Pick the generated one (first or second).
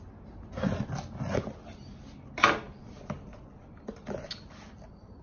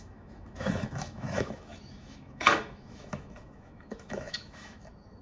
second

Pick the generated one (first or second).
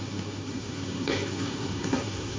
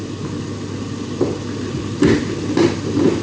first